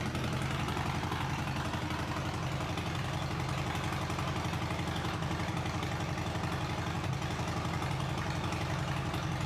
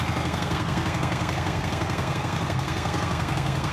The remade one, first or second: second